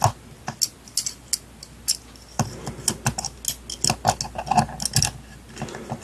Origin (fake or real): real